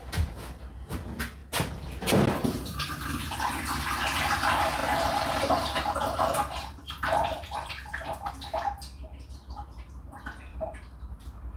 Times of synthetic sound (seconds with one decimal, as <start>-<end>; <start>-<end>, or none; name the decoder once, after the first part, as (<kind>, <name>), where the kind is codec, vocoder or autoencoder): 1.4-2.9 (vocoder, BigVGAN v2); 4.8-8.3; 10.5-11.2